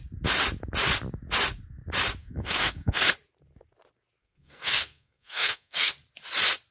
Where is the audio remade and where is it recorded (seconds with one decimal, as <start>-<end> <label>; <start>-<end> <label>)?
0.0-2.2 recorded; 2.2-3.1 remade; 3.1-4.2 recorded; 4.2-5.9 remade; 5.9-6.7 recorded